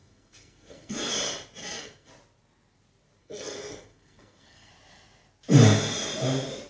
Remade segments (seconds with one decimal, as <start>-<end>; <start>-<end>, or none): 0.0-1.1; 1.6-2.1; 3.2-4.7